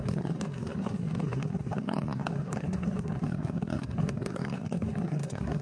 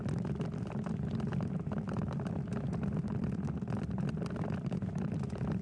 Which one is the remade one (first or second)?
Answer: first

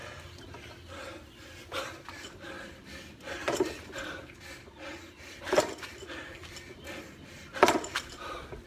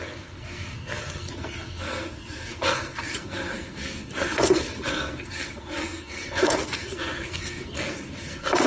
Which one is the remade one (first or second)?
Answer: second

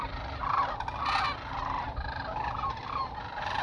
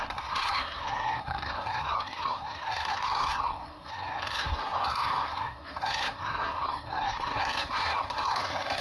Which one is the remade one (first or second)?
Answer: second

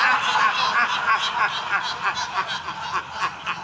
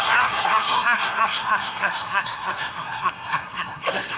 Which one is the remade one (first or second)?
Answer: second